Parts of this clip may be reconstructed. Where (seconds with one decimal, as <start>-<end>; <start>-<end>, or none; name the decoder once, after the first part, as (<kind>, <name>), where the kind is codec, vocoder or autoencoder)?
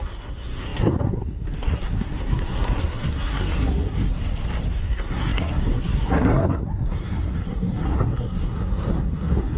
0.0-4.2 (codec, SNAC); 4.8-9.6